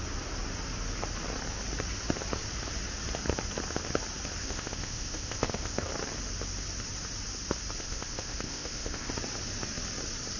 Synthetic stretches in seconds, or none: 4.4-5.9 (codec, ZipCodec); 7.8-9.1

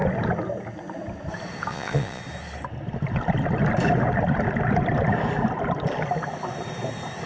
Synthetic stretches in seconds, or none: 1.7-2.2 (vocoder, Vocos)

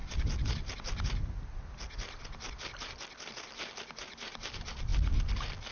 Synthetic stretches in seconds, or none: none

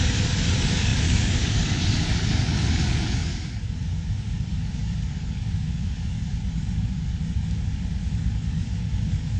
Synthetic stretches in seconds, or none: 0.0-9.4 (codec, DAC)

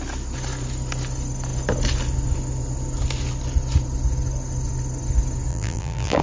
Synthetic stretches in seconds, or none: 5.5-6.2 (vocoder, BigVGAN v2)

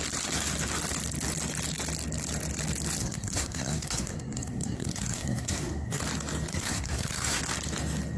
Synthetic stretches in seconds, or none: 3.0-6.0 (codec, SNAC); 6.5-7.4